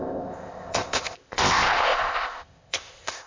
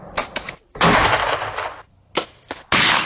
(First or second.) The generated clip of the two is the first